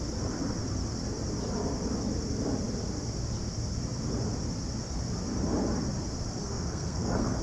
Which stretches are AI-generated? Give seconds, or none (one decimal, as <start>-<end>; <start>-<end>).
6.4-7.4